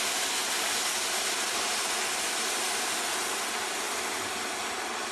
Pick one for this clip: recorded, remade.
recorded